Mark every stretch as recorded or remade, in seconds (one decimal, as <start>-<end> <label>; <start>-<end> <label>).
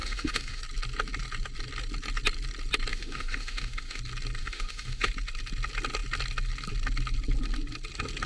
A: 0.0-0.6 remade; 0.6-2.9 recorded; 2.9-4.0 remade; 4.0-4.4 recorded; 4.4-5.1 remade; 5.1-8.3 recorded